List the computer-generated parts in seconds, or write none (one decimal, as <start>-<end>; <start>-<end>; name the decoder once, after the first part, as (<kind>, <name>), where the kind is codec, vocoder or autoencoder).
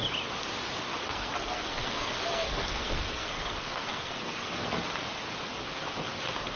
1.0-4.7 (codec, SNAC)